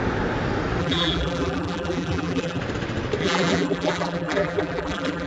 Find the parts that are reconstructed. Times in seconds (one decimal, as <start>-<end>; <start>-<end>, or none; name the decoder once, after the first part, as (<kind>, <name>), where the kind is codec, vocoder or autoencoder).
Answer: 0.8-2.6 (vocoder, BigVGAN v2); 3.2-5.3